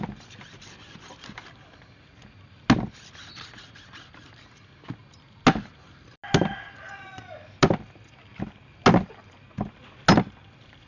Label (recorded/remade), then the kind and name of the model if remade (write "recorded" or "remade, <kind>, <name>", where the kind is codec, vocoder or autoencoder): recorded